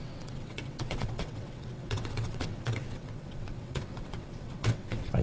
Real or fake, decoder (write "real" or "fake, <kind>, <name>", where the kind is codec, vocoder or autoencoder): fake, vocoder, WaveNeXt